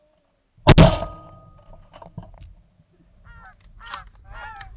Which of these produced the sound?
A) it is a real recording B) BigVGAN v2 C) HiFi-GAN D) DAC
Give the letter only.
A